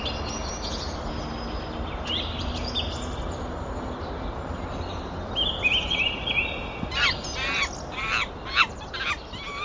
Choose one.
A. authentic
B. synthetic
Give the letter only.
A